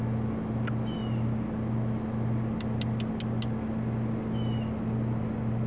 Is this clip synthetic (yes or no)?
no